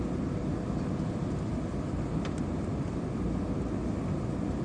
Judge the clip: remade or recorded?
recorded